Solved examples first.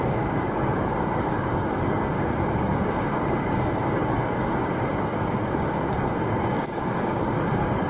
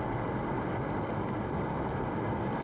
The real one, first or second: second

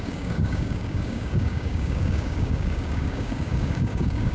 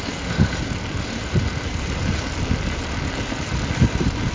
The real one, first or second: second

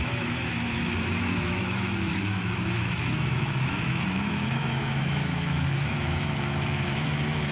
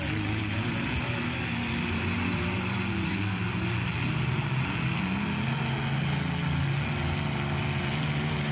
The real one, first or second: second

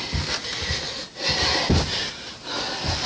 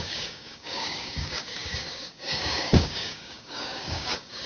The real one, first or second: first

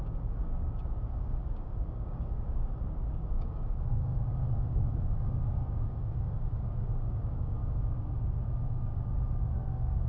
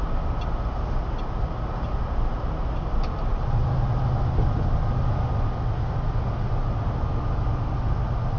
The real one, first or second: second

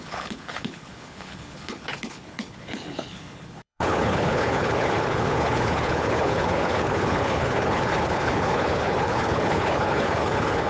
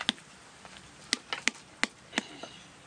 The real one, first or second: second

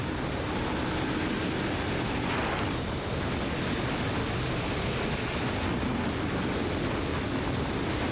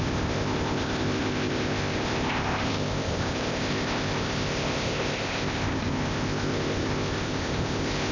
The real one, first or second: first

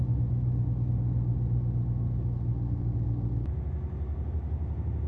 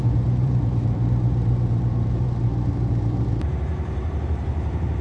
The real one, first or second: first